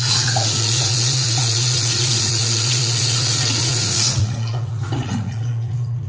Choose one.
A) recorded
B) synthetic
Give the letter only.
B